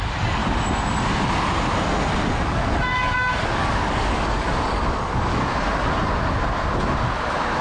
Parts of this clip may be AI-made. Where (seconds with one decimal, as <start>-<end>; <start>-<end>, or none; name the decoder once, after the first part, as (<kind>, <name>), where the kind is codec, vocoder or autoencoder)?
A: 2.9-5.4 (codec, DAC)